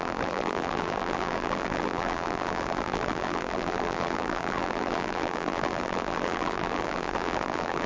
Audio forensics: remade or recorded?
remade